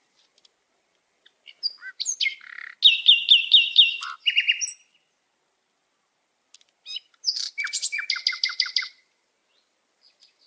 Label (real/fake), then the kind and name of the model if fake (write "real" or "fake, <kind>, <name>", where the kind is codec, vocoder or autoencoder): real